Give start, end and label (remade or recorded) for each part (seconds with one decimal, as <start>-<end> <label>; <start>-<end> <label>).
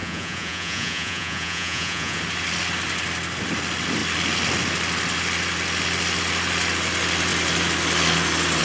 0.0-2.2 remade; 2.2-8.6 recorded